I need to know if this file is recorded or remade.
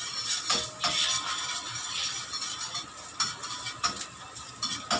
recorded